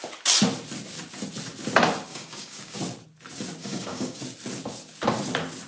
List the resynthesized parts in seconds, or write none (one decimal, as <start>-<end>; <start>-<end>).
2.1-2.8; 3.6-4.2